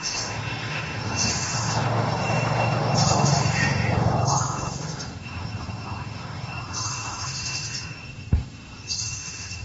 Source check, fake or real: fake